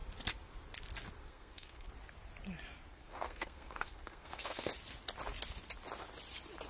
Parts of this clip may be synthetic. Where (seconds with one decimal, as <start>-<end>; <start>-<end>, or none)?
1.3-1.9; 2.9-4.7